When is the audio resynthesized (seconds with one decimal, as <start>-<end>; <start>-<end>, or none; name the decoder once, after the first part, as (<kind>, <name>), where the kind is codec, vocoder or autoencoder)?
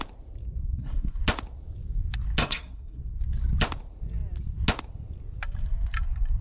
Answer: 0.6-1.2 (codec, SNAC); 2.4-3.0